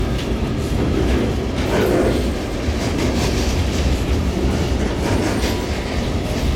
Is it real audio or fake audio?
real